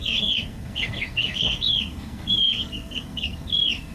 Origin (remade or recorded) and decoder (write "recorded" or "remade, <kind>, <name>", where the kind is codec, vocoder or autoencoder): remade, codec, SNAC